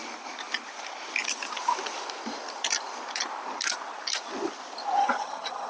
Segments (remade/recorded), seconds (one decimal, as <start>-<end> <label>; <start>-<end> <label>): 0.0-5.0 recorded; 5.0-5.7 remade